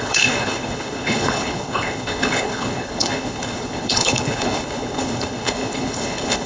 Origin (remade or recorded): remade